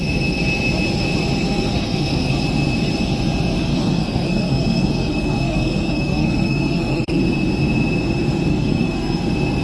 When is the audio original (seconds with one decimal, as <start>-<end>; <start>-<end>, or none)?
0.0-1.4; 2.3-3.7; 7.2-8.5; 9.2-9.6